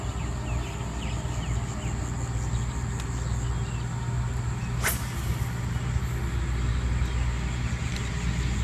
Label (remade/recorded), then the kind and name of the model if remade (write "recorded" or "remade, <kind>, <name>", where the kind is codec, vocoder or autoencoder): recorded